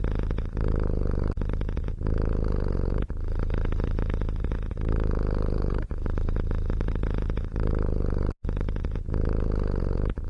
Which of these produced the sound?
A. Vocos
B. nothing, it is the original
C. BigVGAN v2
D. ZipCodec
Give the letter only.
B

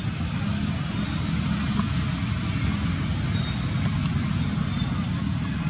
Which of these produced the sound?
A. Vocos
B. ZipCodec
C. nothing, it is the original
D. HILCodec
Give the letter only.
C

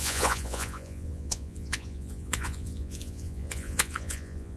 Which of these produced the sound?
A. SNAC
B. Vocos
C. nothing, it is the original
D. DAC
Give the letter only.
B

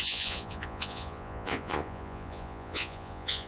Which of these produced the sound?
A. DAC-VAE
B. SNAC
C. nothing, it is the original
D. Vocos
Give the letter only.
D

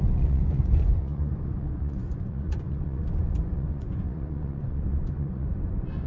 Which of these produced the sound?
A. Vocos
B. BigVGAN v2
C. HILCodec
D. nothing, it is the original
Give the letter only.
A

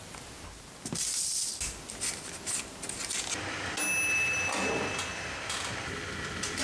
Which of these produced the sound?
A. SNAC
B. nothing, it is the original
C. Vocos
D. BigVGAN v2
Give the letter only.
B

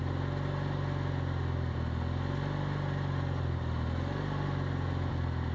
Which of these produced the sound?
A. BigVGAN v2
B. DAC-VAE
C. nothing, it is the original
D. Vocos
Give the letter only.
C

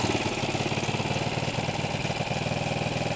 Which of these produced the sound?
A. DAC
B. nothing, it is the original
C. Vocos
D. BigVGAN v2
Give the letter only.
B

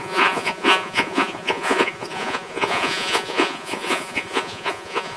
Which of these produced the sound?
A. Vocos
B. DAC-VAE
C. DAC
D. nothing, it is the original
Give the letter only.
A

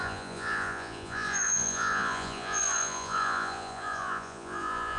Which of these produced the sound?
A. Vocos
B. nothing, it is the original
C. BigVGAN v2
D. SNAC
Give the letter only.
A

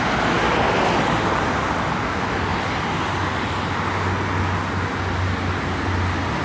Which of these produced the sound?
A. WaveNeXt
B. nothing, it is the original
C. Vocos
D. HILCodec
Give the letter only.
B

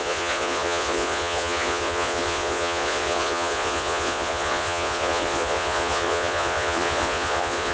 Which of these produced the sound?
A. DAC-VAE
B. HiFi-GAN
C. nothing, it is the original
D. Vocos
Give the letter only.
D